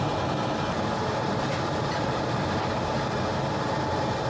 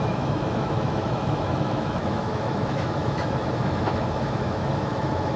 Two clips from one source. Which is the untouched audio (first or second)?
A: first